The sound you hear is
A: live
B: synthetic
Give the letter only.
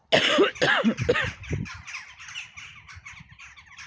A